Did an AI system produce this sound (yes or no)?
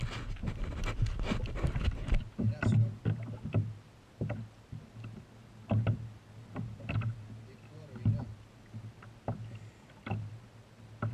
no